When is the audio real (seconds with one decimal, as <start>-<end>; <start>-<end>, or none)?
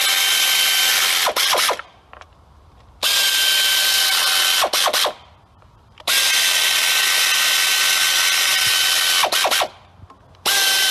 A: 0.0-10.9